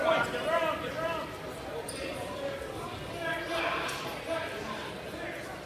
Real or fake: real